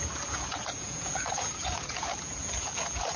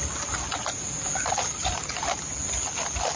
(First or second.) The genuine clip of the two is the second